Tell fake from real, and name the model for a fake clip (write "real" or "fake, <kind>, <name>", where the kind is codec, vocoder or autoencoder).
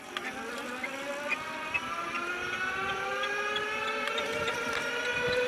real